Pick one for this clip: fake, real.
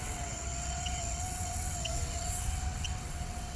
fake